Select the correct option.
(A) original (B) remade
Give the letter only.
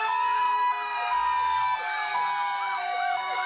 B